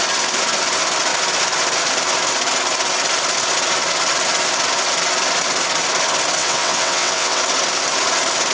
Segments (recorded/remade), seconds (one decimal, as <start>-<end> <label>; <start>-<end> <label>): 0.0-6.4 recorded; 6.4-7.4 remade; 7.4-8.5 recorded